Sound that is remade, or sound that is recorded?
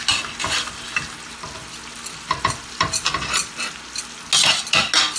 recorded